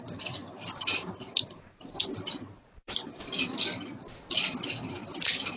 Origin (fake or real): fake